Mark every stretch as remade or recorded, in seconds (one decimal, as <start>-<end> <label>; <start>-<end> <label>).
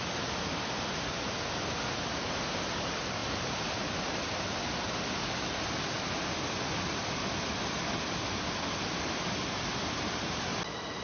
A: 0.0-11.0 recorded